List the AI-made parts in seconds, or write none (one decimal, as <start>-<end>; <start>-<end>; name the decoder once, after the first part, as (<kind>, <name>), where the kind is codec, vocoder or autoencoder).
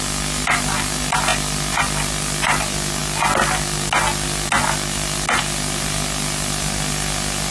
none